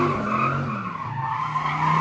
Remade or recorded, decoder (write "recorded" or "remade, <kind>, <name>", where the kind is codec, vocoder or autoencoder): recorded